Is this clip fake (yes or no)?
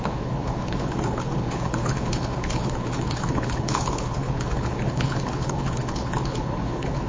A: yes